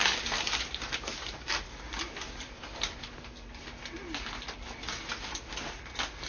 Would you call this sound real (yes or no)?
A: yes